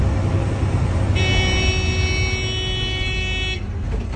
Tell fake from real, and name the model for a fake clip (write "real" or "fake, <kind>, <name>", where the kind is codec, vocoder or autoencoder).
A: real